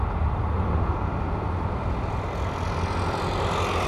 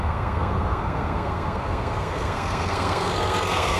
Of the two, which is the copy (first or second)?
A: second